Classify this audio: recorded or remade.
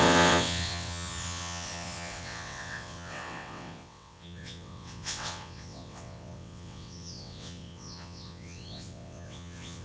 remade